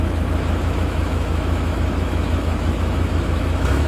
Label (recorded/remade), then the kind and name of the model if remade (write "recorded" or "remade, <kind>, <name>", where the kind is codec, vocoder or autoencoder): remade, autoencoder, DAC-VAE